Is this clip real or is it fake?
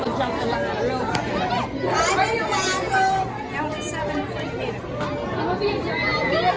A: real